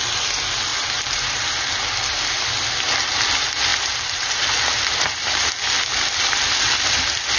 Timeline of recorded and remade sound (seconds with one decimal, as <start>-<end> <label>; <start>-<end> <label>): 0.0-0.7 recorded; 0.7-1.7 remade; 1.7-3.7 recorded; 3.7-5.5 remade; 5.5-7.4 recorded